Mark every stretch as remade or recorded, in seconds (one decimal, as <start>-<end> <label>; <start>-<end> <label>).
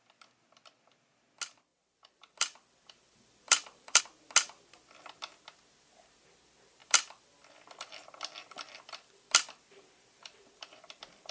0.0-1.7 recorded; 1.7-4.0 remade; 4.0-6.8 recorded; 6.8-11.3 remade